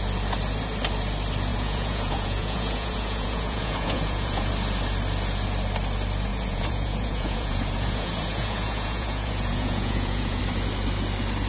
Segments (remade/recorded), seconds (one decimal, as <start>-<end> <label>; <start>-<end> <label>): 0.0-1.5 recorded; 1.5-4.5 remade; 4.5-6.3 recorded; 6.3-10.4 remade; 10.4-11.5 recorded